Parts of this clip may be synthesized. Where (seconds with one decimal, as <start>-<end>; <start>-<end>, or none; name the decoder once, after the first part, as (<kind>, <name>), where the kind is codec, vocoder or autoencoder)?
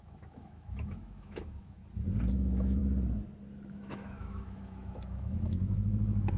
0.0-1.8 (autoencoder, DAC-VAE); 2.3-2.8; 3.7-6.4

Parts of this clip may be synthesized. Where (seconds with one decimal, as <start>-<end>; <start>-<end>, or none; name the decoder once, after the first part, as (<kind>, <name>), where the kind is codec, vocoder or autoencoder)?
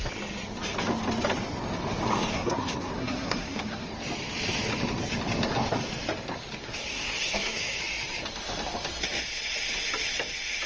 2.3-3.9 (codec, SNAC); 6.6-7.8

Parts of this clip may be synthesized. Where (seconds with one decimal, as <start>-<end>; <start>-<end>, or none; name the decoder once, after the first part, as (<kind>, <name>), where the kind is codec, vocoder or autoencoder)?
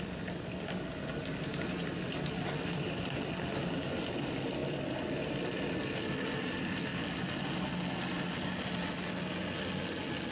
none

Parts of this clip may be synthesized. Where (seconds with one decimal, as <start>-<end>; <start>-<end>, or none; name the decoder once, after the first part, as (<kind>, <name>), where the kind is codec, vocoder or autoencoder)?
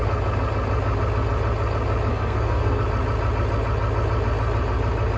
2.1-2.8 (codec, SNAC)